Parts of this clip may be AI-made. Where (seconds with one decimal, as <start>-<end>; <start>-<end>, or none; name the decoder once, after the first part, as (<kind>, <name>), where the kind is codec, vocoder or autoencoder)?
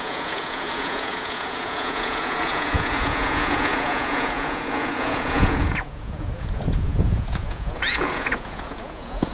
0.0-9.3 (vocoder, Vocos)